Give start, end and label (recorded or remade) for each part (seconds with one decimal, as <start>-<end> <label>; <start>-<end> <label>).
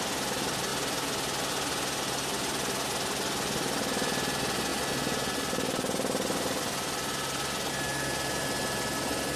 0.0-9.4 recorded